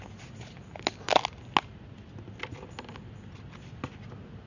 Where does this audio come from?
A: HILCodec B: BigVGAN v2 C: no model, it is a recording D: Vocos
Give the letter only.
C